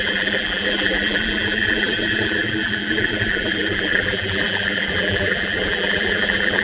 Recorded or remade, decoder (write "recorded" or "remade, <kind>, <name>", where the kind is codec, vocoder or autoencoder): remade, vocoder, BigVGAN v2